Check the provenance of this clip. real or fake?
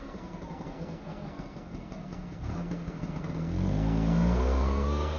fake